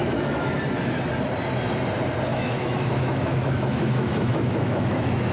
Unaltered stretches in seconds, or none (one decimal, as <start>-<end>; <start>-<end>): 0.6-2.3